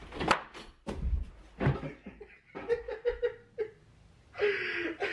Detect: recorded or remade recorded